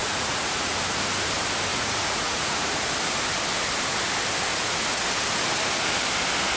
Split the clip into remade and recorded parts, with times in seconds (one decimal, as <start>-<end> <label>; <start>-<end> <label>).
0.0-0.8 remade; 0.8-1.7 recorded; 1.7-2.7 remade; 2.7-4.5 recorded; 4.5-5.0 remade; 5.0-6.6 recorded